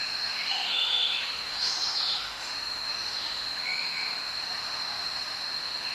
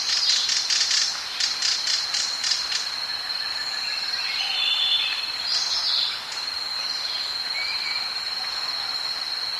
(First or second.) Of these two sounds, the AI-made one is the first